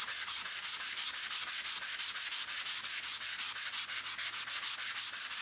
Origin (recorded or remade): recorded